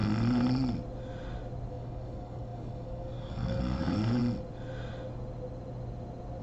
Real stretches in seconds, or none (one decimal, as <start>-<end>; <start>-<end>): 0.0-1.7; 4.2-6.4